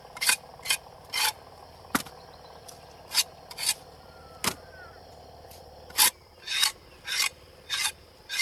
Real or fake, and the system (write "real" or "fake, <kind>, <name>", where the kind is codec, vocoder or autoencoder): real